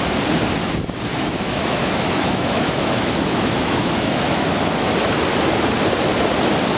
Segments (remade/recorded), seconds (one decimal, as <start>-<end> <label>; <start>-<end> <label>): 0.0-1.1 recorded; 1.1-4.9 remade; 4.9-6.8 recorded